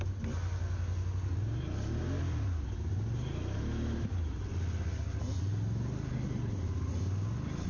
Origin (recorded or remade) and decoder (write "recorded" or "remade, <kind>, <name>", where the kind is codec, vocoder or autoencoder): recorded